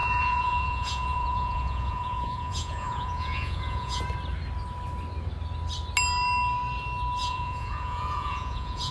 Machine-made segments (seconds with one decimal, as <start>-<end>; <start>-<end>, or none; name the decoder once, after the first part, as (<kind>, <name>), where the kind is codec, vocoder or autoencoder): 0.0-4.0 (vocoder, Vocos); 7.2-8.9